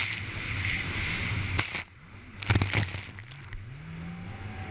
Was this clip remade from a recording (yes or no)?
no